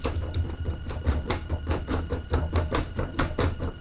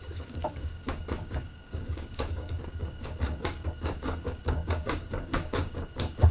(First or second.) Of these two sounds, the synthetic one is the second